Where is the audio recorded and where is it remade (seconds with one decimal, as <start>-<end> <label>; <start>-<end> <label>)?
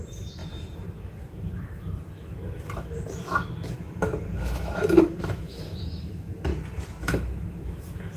0.0-6.5 remade; 6.5-7.0 recorded; 7.0-8.2 remade